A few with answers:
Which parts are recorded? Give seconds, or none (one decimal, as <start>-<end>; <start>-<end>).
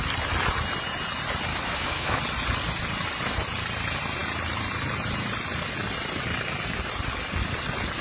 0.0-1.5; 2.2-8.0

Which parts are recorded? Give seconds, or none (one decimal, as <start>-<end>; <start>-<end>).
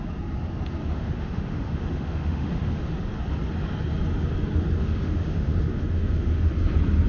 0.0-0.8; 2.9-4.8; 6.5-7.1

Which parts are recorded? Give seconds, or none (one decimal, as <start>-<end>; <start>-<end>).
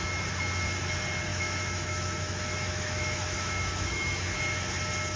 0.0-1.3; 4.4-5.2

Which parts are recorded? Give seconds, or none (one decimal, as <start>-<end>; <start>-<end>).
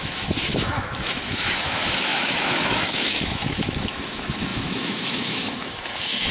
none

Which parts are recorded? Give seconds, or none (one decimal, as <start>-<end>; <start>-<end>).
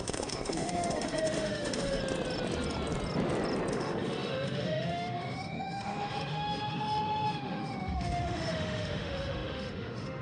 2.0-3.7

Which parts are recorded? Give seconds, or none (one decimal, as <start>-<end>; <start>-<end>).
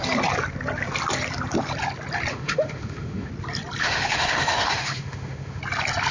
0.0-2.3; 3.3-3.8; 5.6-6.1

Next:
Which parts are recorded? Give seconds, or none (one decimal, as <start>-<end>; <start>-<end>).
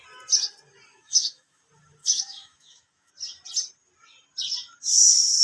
0.0-0.9; 1.6-2.0; 3.1-5.4